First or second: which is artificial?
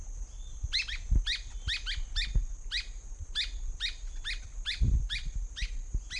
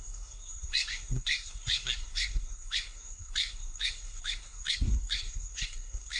second